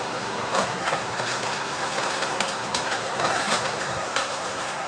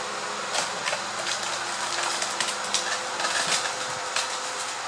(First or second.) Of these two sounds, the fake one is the first